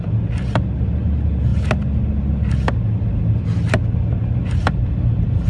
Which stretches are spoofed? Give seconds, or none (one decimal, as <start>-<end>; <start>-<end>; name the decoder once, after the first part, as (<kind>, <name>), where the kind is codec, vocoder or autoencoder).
none